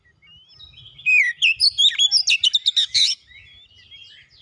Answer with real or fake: real